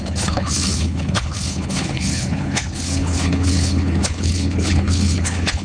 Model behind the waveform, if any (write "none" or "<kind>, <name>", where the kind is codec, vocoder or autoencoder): codec, HILCodec